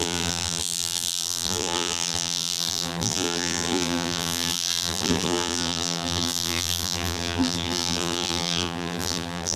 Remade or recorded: remade